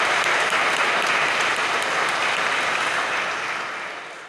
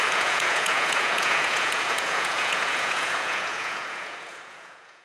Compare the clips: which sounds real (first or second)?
first